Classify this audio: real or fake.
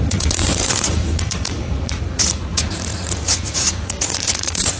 fake